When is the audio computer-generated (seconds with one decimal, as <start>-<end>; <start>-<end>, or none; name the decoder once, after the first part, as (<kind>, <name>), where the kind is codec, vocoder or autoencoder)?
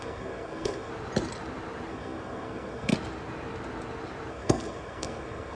0.0-0.9 (codec, SNAC); 1.9-2.9; 4.3-5.5